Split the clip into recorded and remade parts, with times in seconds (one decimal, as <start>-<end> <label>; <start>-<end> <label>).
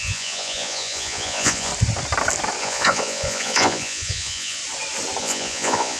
0.0-1.7 remade; 1.7-2.6 recorded; 2.6-4.6 remade; 4.6-5.2 recorded; 5.2-6.0 remade